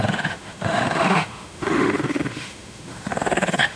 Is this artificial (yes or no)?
yes